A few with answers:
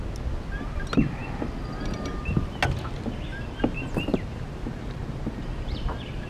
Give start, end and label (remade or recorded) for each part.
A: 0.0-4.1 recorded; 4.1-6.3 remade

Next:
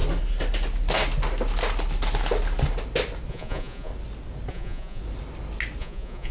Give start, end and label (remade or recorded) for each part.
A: 0.0-3.3 recorded; 3.3-3.9 remade; 3.9-4.5 recorded; 4.5-5.0 remade; 5.0-5.8 recorded; 5.8-6.3 remade

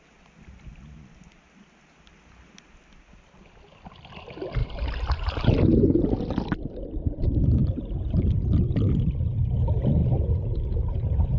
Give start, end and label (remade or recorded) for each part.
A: 0.0-4.6 recorded; 4.6-5.3 remade; 5.3-7.6 recorded; 7.6-9.4 remade; 9.4-11.4 recorded

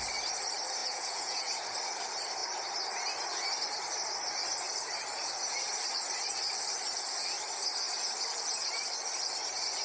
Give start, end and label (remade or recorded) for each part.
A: 0.0-0.8 recorded; 0.8-1.4 remade; 1.4-9.8 recorded

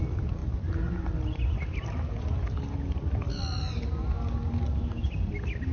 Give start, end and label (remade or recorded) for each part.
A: 0.0-5.7 recorded

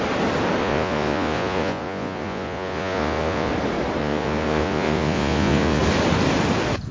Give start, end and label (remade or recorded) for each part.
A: 0.0-0.6 recorded; 0.6-3.5 remade; 3.5-4.0 recorded; 4.0-5.8 remade; 5.8-6.9 recorded

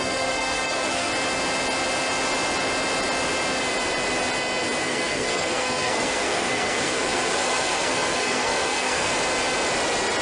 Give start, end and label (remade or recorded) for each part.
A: 0.0-1.1 remade; 1.1-4.8 recorded; 4.8-9.1 remade; 9.1-10.2 recorded

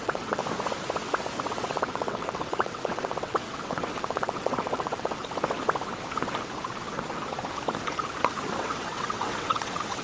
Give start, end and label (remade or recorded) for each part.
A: 0.0-0.4 remade; 0.4-1.5 recorded; 1.5-5.2 remade; 5.2-8.6 recorded; 8.6-10.0 remade